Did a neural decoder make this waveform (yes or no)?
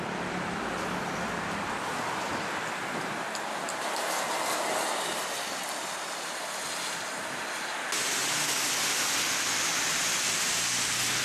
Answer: no